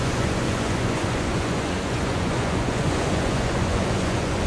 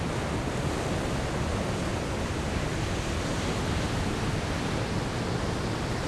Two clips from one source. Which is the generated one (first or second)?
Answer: first